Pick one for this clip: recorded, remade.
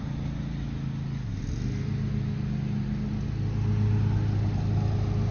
recorded